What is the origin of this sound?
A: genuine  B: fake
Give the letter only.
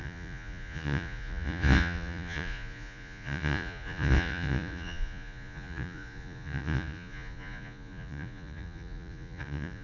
B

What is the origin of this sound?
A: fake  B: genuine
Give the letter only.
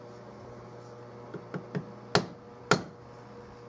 B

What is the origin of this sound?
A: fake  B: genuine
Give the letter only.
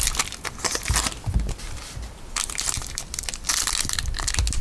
B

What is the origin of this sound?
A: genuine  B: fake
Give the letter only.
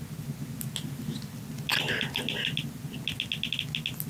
A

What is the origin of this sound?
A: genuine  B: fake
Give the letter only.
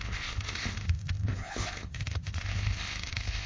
B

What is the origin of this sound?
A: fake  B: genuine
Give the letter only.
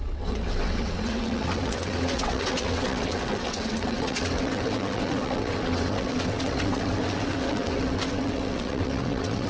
A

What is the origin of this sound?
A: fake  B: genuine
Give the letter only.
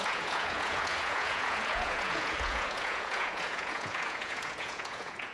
A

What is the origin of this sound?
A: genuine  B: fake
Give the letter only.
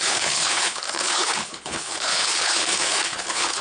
B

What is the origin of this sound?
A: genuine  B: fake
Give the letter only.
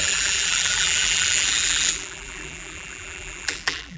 B